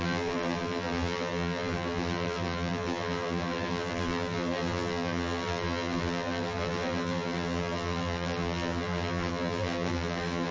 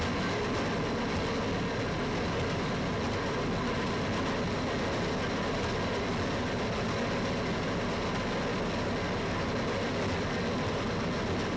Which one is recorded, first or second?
second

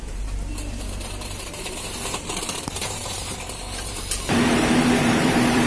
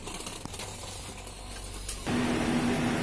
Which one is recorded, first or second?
second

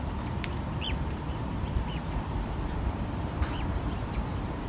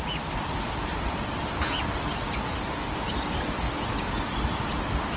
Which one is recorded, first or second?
second